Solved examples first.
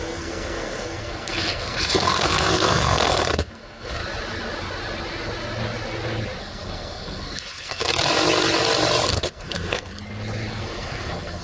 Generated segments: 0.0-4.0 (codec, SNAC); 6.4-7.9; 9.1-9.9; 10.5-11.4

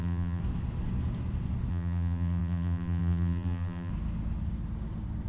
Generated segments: 0.0-0.4 (vocoder, BigVGAN v2); 1.7-3.9

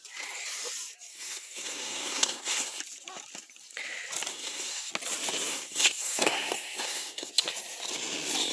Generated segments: 1.1-2.8 (codec, SNAC); 4.3-4.9; 5.5-7.3

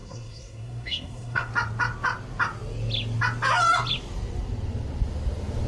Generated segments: 0.0-1.5 (codec, SNAC)